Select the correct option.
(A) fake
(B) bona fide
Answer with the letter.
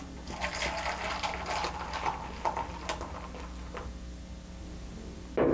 B